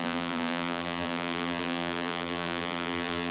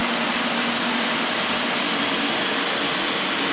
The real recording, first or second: second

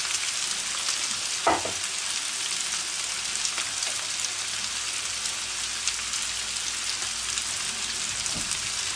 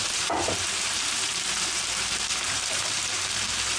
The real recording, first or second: first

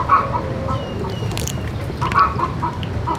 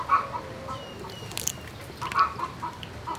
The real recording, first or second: second